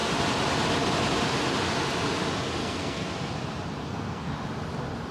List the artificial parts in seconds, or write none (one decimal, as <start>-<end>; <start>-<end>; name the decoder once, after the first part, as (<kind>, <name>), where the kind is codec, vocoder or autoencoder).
2.6-3.1 (codec, SNAC); 3.8-4.3